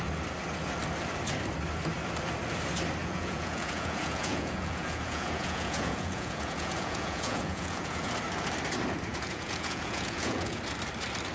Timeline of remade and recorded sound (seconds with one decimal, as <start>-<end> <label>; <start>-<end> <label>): 0.0-3.0 recorded; 3.0-8.1 remade; 8.1-9.1 recorded; 9.1-10.6 remade; 10.6-11.3 recorded